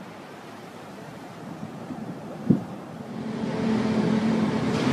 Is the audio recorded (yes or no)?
no